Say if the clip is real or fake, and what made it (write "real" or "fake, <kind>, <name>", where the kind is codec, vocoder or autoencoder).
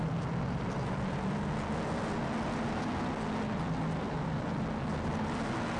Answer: real